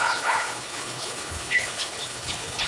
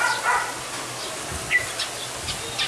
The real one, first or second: second